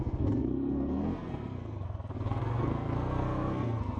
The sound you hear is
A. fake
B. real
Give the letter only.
A